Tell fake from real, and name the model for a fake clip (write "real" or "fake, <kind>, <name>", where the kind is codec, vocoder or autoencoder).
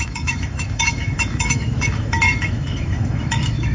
fake, autoencoder, DAC-VAE